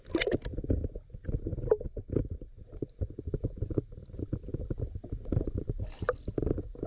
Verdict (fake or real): real